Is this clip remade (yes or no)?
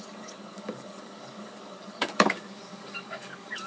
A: yes